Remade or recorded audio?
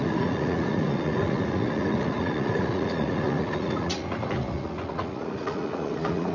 remade